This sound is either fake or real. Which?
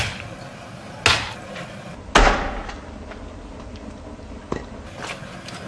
real